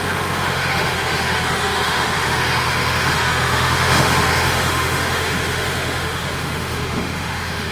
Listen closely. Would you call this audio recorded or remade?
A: remade